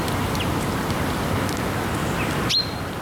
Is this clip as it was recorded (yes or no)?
yes